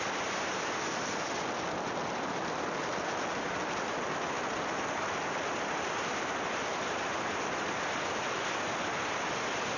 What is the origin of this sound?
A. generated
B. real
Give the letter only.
B